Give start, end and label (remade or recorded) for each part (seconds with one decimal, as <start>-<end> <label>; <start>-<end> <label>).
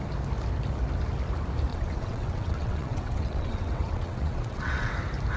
0.0-1.7 recorded; 1.7-4.9 remade; 4.9-5.4 recorded